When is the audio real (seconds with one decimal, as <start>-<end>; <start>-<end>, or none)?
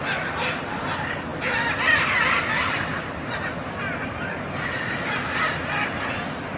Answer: 0.0-6.6